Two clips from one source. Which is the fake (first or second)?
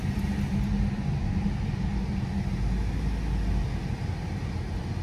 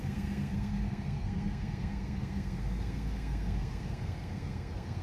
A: second